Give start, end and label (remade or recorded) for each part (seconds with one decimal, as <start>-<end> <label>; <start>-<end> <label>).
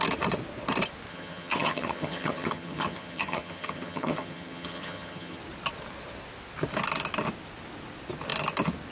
0.0-1.1 recorded; 1.1-5.4 remade; 5.4-8.9 recorded